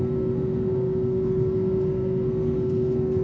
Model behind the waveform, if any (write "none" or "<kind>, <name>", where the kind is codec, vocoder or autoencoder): codec, SNAC